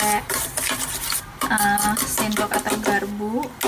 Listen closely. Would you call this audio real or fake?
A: real